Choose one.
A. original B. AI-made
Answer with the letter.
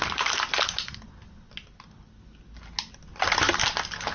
A